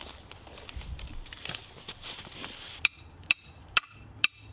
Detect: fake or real fake